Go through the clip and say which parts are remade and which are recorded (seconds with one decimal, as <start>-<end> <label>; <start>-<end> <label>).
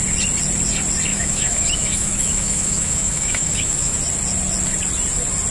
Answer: 0.0-1.1 recorded; 1.1-4.0 remade; 4.0-5.5 recorded